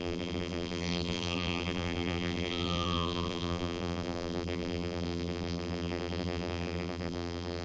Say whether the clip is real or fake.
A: fake